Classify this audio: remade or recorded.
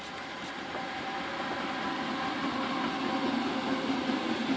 recorded